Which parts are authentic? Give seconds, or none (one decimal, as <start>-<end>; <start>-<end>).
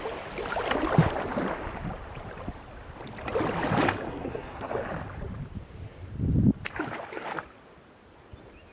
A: 0.0-4.1; 4.7-8.7